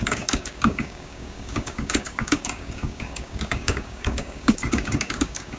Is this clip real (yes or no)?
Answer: no